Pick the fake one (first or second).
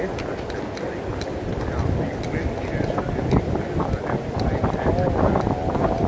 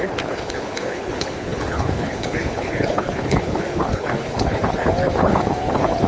second